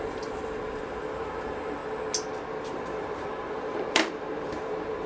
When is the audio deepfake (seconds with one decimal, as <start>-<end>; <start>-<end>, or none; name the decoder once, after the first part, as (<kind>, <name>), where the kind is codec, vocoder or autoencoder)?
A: 0.0-1.8 (vocoder, BigVGAN v2); 2.6-5.1

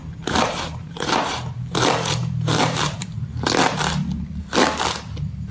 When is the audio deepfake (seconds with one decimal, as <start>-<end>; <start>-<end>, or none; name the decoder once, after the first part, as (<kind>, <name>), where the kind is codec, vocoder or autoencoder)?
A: 0.0-3.2 (vocoder, BigVGAN v2)

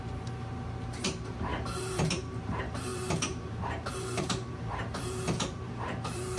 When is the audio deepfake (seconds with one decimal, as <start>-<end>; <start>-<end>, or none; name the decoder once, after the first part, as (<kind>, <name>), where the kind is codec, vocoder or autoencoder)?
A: 0.0-6.4 (vocoder, BigVGAN v2)

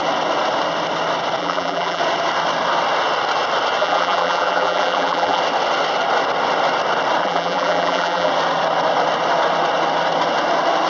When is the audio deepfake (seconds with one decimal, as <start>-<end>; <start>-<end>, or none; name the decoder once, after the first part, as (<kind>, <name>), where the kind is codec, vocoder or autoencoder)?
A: 1.4-2.0 (vocoder, BigVGAN v2); 3.8-5.4; 7.2-8.3

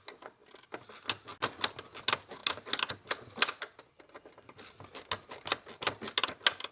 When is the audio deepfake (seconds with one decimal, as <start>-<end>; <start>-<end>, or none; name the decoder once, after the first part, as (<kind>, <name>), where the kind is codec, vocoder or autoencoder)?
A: none

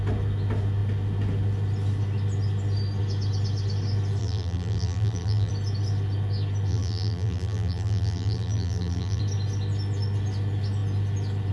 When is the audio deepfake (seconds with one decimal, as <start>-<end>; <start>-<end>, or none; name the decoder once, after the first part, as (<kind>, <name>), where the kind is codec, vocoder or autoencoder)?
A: 4.2-5.5 (vocoder, BigVGAN v2); 6.7-9.2